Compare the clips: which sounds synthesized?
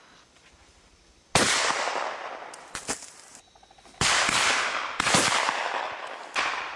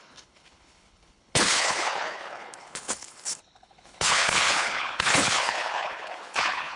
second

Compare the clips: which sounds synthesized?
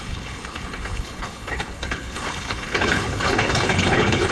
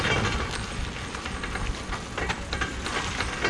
first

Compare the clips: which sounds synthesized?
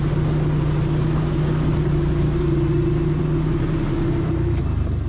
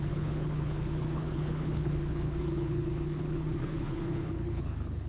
second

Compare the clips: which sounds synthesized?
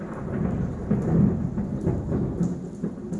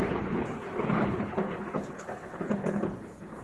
second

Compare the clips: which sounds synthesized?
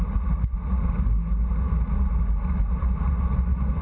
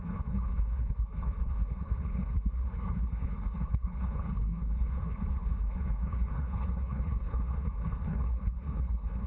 second